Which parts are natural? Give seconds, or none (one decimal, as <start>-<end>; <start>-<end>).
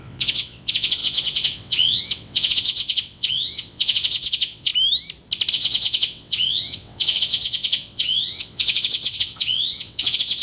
4.7-5.5